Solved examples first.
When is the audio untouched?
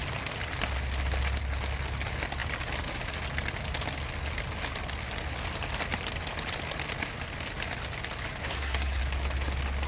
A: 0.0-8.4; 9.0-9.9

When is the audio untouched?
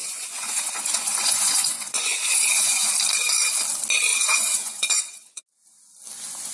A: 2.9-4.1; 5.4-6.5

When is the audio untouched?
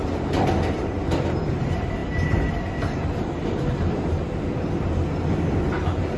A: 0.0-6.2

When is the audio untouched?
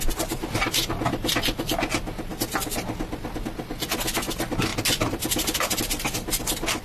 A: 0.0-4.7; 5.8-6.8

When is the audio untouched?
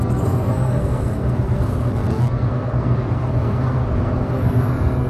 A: none